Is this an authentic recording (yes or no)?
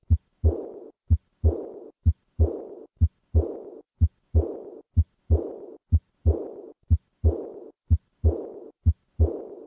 yes